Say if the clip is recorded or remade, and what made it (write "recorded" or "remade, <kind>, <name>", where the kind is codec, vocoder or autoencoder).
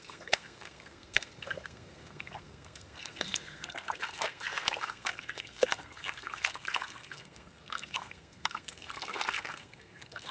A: remade, codec, SNAC